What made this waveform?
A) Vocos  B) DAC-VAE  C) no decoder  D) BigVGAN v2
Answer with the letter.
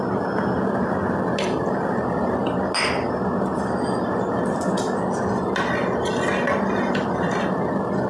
C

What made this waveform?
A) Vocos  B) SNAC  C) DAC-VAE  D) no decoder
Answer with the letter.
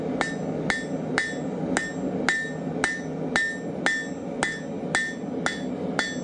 D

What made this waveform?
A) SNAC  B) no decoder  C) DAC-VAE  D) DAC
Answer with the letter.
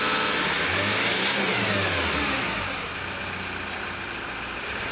B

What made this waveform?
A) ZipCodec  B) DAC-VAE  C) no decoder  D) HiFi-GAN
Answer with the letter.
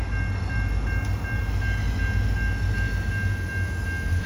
C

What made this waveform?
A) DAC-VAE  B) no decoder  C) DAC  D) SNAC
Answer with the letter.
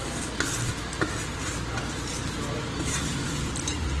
B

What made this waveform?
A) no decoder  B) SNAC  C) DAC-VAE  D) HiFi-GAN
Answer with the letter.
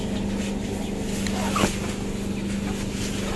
A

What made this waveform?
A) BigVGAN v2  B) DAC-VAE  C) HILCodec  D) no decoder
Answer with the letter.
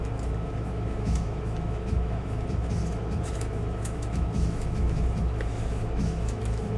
B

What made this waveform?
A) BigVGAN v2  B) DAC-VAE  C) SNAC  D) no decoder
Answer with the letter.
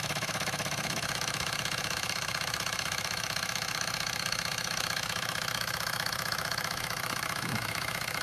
B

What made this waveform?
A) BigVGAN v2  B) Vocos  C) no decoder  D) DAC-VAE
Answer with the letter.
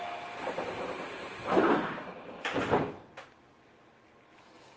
C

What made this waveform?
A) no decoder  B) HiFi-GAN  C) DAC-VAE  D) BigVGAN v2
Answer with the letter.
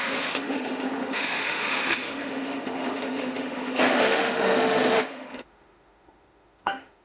C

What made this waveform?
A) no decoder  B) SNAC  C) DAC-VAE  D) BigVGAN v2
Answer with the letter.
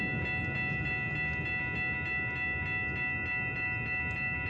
A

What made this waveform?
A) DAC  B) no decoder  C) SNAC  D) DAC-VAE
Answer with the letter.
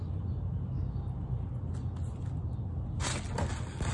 B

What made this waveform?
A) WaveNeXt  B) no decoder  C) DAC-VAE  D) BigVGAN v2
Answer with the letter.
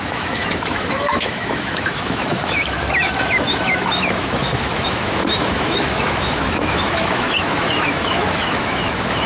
C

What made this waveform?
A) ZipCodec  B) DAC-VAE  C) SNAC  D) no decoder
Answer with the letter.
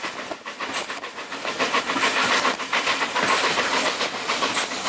D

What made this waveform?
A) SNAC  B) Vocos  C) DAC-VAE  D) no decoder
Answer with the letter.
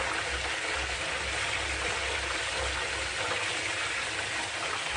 D